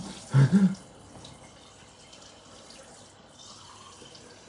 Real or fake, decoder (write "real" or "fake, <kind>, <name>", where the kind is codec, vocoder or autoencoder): real